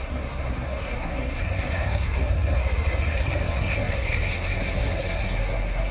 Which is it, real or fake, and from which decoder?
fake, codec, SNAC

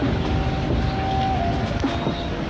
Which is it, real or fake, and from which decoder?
real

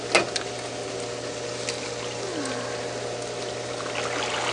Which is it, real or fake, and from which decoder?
real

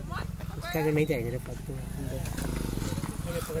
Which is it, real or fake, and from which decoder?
real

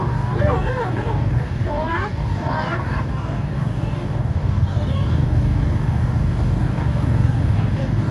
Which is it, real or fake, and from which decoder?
fake, codec, DAC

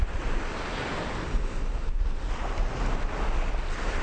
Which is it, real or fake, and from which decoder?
real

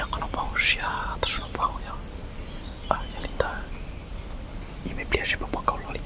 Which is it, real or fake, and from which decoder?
real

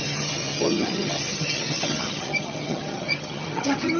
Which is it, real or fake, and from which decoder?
fake, vocoder, HiFi-GAN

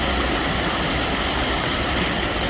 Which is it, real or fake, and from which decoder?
real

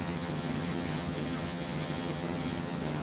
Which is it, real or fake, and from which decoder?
fake, vocoder, HiFi-GAN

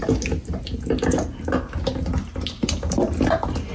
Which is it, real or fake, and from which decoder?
real